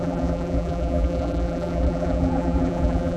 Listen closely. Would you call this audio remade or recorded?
remade